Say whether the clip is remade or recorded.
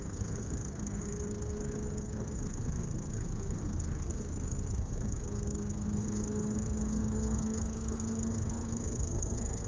remade